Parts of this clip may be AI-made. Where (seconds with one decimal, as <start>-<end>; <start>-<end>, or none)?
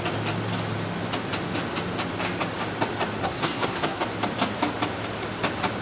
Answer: 3.2-4.0